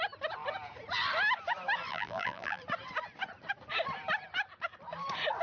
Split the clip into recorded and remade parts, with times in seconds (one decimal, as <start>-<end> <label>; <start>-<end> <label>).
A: 0.0-1.9 recorded; 1.9-2.6 remade; 2.6-5.4 recorded